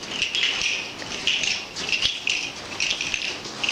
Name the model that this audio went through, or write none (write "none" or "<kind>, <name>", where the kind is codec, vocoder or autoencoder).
none